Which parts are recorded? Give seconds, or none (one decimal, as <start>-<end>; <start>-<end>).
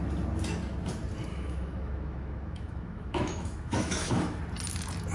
0.0-1.3; 4.4-5.1